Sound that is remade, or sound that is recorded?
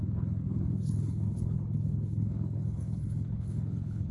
remade